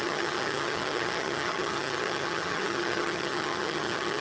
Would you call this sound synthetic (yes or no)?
yes